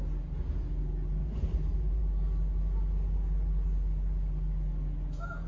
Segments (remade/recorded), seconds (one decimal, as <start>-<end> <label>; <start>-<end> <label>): 0.0-1.2 recorded; 1.2-2.0 remade; 2.0-5.5 recorded